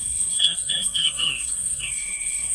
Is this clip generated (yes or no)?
yes